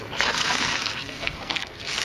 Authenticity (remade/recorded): remade